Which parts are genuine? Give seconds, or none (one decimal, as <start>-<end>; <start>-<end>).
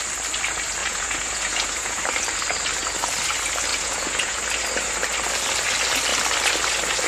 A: 0.0-0.8; 2.0-3.7; 4.4-7.1